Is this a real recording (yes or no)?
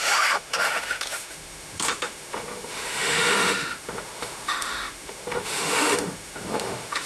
no